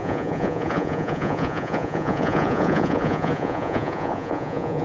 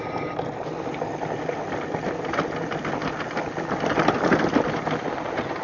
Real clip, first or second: second